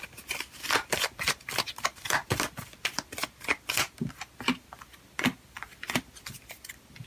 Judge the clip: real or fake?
real